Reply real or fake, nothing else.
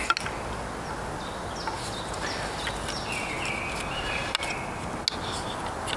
real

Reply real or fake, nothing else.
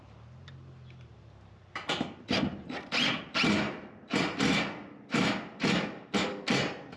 real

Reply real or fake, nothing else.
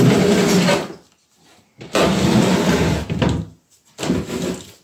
real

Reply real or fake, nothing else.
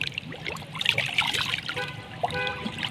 fake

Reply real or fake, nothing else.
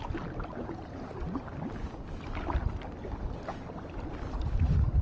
real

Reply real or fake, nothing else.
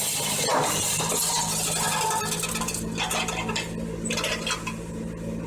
real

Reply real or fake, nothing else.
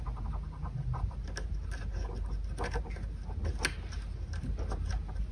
real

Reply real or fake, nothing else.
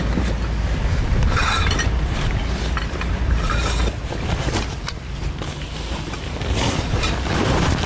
fake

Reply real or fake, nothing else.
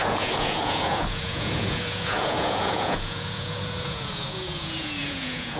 fake